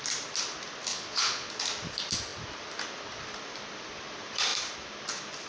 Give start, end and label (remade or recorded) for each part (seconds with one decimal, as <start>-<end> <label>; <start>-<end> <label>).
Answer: 0.0-0.9 recorded; 0.9-1.5 remade; 1.5-5.5 recorded